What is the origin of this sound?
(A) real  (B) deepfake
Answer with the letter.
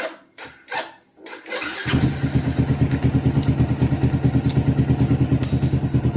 A